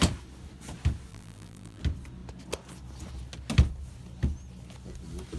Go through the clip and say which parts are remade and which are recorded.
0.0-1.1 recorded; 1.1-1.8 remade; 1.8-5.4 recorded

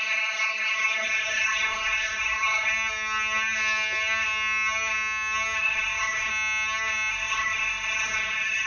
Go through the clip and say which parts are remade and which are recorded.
0.0-2.7 remade; 2.7-5.6 recorded; 5.6-6.3 remade; 6.3-7.1 recorded; 7.1-8.7 remade

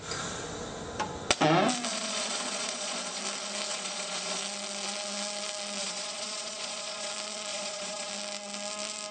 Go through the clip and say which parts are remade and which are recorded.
0.0-1.9 recorded; 1.9-3.2 remade; 3.2-3.7 recorded; 3.7-4.4 remade; 4.4-5.8 recorded; 5.8-7.1 remade; 7.1-7.5 recorded; 7.5-8.1 remade; 8.1-9.1 recorded

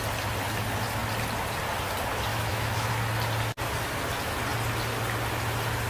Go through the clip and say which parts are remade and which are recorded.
0.0-2.3 recorded; 2.3-2.9 remade; 2.9-5.9 recorded

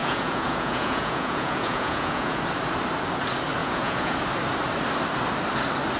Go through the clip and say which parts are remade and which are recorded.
0.0-2.4 remade; 2.4-3.6 recorded; 3.6-4.2 remade; 4.2-6.0 recorded

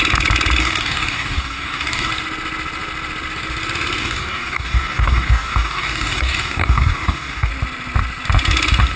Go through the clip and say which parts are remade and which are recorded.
0.0-0.6 recorded; 0.6-2.1 remade; 2.1-4.0 recorded; 4.0-7.5 remade; 7.5-9.0 recorded